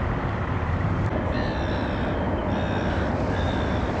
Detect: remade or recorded recorded